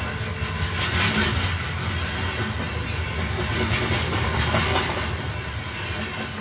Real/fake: real